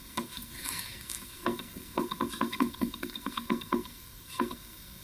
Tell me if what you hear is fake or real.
fake